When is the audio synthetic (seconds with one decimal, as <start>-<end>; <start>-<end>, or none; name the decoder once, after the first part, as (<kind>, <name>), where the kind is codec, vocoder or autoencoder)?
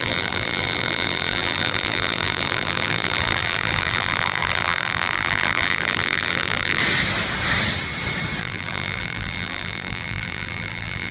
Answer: 0.0-6.8 (vocoder, BigVGAN v2); 8.4-11.1